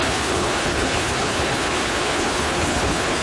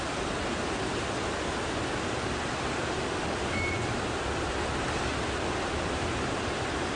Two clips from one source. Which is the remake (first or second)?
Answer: first